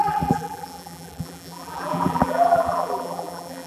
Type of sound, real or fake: fake